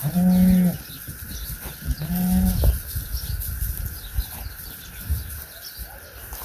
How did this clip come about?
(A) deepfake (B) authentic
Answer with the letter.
B